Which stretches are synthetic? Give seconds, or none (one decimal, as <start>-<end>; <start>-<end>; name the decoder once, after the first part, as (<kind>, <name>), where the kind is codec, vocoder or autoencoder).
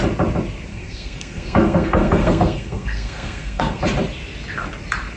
0.7-3.8 (codec, SNAC)